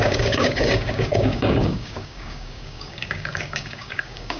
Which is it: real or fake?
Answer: fake